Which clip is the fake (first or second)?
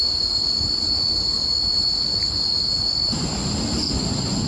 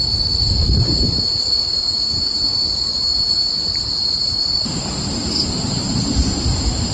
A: second